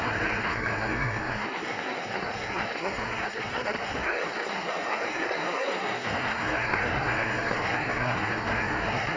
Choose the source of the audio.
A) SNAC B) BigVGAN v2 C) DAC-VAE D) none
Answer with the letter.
A